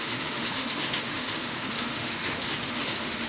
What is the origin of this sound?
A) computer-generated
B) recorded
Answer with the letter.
A